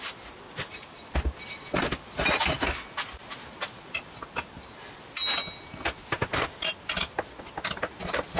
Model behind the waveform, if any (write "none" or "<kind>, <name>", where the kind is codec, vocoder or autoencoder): none